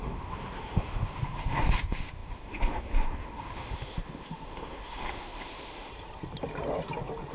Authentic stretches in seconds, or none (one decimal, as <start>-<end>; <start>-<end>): 5.9-7.3